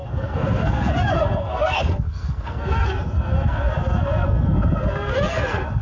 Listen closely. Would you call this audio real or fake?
fake